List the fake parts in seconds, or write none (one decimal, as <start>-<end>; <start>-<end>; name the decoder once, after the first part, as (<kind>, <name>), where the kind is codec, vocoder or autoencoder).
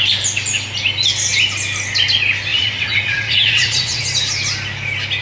2.5-4.0 (vocoder, WaveNeXt)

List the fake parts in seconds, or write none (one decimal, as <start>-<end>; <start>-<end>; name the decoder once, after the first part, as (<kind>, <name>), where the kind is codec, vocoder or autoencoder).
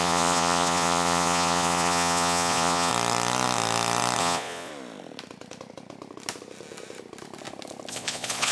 0.0-2.9 (vocoder, Vocos); 4.2-4.7; 7.9-8.5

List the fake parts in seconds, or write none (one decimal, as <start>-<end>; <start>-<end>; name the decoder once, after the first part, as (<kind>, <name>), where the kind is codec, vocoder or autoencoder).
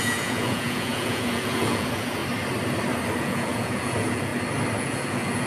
0.0-2.2 (vocoder, Vocos); 3.2-4.3; 4.8-5.5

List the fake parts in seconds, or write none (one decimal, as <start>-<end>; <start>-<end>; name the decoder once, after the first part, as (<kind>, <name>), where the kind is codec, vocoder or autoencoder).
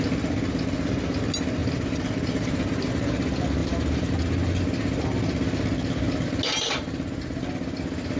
1.6-2.9 (vocoder, BigVGAN v2); 3.6-4.1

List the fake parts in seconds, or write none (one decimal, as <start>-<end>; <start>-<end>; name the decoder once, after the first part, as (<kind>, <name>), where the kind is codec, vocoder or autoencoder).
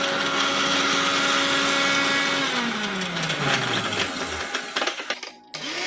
none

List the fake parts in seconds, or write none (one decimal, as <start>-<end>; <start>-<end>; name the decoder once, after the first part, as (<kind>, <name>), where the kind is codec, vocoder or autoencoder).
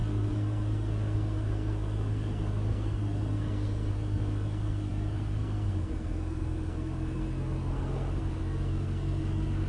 0.0-9.7 (codec, SNAC)